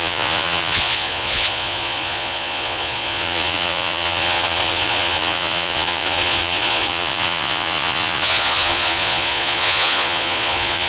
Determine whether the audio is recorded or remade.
remade